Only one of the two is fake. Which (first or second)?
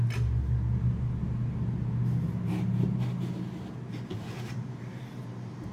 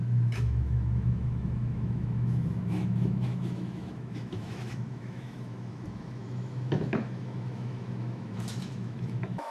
second